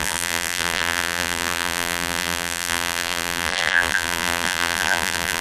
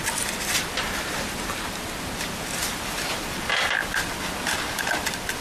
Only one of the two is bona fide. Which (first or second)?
second